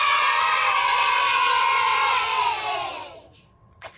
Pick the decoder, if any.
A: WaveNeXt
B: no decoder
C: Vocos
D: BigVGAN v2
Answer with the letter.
A